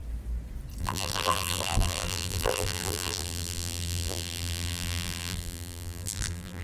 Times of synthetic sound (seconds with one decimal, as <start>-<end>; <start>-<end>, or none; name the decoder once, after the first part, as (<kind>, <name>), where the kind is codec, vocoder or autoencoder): 0.8-6.6 (vocoder, BigVGAN v2)